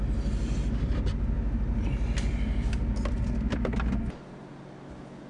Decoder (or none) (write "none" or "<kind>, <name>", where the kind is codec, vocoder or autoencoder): none